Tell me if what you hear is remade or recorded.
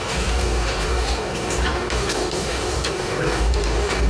remade